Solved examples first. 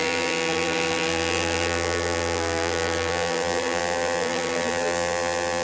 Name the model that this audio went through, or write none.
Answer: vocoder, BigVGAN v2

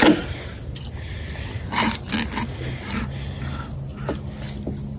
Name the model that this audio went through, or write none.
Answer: none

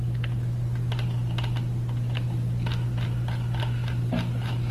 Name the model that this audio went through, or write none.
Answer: none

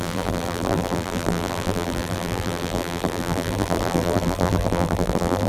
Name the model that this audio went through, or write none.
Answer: vocoder, BigVGAN v2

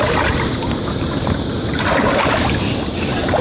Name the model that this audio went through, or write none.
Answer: none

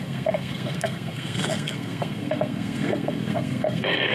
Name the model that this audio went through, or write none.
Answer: codec, SNAC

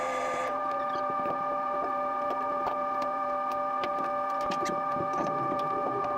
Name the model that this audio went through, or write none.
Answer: vocoder, BigVGAN v2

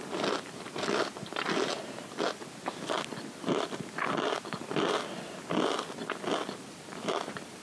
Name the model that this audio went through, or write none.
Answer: none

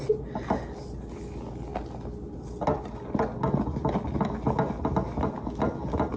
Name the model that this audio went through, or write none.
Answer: none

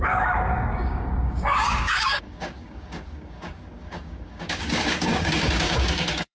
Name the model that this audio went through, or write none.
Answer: codec, DAC